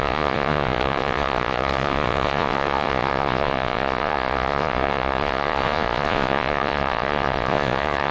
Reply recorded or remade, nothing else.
remade